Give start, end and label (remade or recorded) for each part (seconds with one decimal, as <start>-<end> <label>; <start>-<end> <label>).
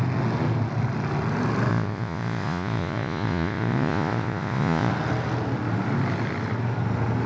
0.0-1.7 recorded; 1.7-4.9 remade; 4.9-7.3 recorded